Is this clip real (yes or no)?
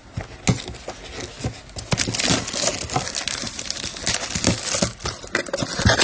yes